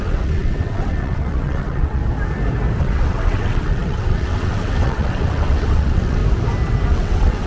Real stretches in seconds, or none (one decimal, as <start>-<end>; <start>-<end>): 2.0-2.8; 6.2-6.9